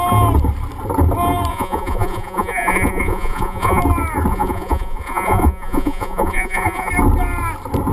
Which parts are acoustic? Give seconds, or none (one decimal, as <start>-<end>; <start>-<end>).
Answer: 0.0-1.5; 3.8-4.3; 6.9-7.9